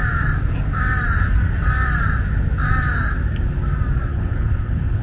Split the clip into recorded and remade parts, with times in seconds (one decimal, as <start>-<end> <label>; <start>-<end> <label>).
0.0-4.1 recorded; 4.1-5.0 remade

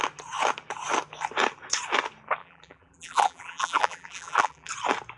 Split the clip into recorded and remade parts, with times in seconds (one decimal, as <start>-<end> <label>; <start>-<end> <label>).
0.0-2.4 recorded; 2.4-4.7 remade; 4.7-5.2 recorded